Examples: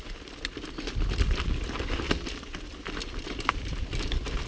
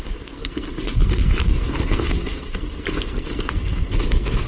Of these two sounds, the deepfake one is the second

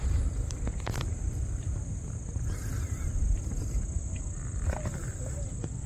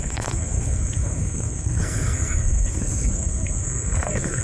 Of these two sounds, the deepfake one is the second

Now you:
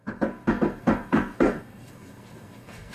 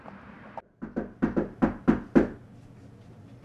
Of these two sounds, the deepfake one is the first